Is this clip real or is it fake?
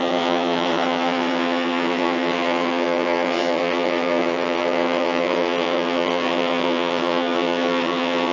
fake